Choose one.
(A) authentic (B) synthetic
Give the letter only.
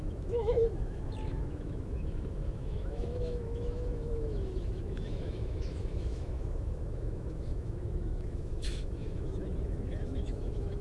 B